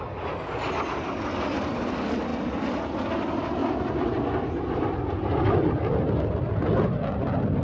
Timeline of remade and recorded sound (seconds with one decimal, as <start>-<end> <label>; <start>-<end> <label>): 0.0-7.6 recorded